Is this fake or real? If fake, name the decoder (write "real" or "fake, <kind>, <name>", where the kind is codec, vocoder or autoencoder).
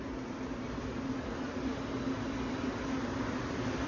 real